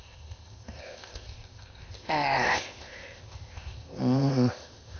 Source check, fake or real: fake